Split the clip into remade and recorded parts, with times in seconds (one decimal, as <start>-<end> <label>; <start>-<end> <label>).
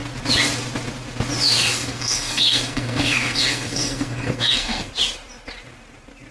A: 0.0-1.6 recorded; 1.6-4.9 remade; 4.9-6.3 recorded